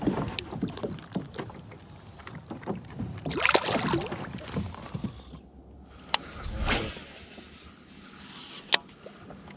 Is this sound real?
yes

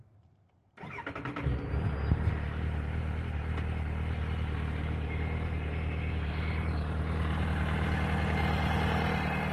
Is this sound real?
yes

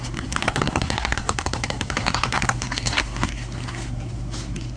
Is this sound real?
no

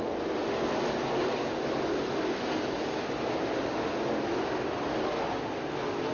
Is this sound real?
yes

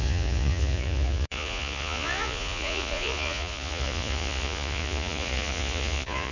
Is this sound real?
no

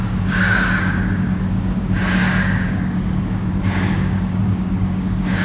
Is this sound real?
no